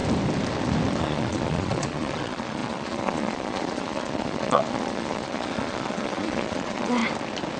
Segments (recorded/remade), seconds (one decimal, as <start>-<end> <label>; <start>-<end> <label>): 0.0-1.0 recorded; 1.0-7.0 remade; 7.0-7.6 recorded